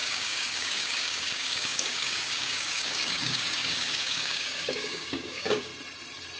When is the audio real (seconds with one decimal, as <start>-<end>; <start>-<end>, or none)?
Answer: 5.7-6.4

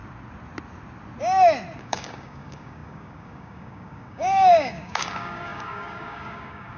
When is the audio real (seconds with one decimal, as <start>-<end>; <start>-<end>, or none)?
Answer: 0.0-1.8

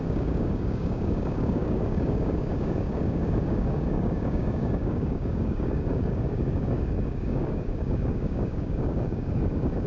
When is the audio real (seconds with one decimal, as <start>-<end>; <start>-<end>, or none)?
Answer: none

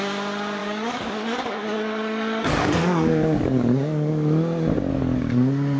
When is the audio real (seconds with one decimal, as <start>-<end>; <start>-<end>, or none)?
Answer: 0.0-0.6; 4.1-4.9

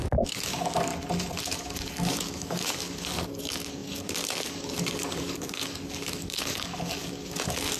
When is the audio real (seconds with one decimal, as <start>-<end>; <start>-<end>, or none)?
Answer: 0.9-1.4